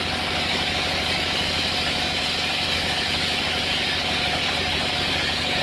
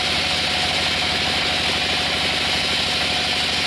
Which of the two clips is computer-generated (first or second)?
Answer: first